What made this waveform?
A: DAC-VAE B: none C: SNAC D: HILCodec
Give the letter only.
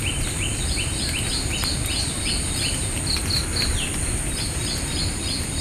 B